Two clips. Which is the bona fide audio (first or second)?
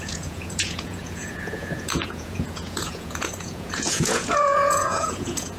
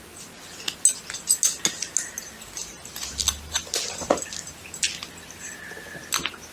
second